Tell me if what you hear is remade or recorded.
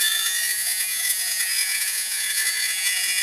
remade